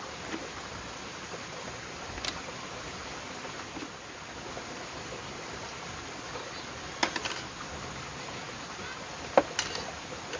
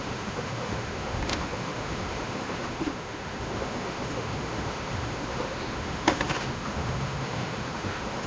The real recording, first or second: first